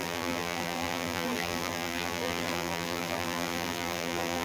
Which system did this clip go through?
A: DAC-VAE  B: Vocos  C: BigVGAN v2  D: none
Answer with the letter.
C